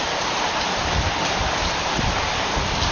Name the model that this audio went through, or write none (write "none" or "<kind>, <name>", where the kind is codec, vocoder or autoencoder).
none